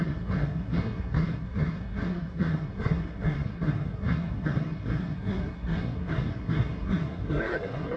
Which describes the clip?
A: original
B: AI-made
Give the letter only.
B